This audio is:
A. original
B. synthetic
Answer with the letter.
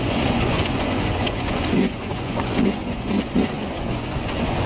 B